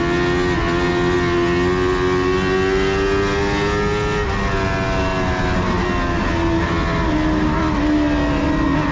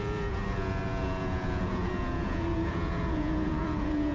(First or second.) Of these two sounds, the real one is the first